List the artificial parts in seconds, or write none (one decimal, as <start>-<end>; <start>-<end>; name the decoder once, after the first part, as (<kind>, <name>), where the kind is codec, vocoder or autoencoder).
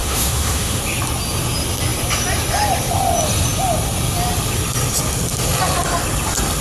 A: 0.0-0.8 (autoencoder, DAC-VAE)